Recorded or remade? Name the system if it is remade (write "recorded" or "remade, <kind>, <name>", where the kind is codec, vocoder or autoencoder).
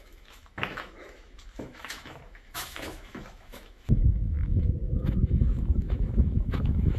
remade, autoencoder, DAC-VAE